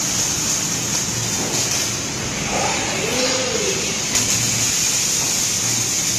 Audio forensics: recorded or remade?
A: recorded